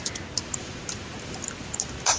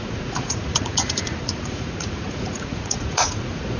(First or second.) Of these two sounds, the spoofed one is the second